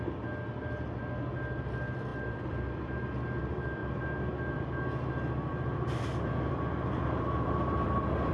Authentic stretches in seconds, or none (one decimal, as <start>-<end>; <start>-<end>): 0.0-2.1; 3.1-3.8; 4.6-5.4